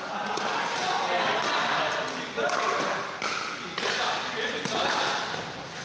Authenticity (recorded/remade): recorded